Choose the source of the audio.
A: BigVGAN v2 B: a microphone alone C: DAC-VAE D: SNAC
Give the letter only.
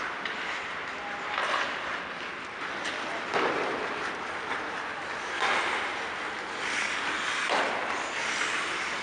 B